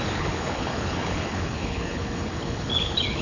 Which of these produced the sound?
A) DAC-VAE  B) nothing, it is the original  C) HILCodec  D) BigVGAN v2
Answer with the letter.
C